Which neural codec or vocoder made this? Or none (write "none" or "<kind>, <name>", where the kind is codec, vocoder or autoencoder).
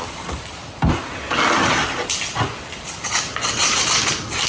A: none